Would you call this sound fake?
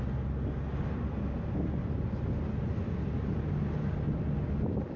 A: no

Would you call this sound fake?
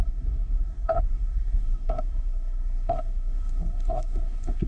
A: yes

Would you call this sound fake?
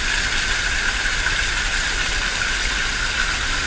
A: no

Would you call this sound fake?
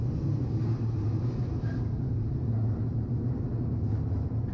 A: no